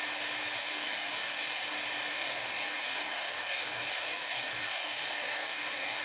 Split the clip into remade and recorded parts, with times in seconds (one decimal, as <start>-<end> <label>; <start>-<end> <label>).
0.0-0.6 recorded; 0.6-1.7 remade; 1.7-2.1 recorded; 2.1-6.0 remade